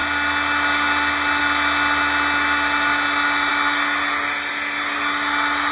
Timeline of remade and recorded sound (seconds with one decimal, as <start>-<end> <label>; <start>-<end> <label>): 0.0-5.7 recorded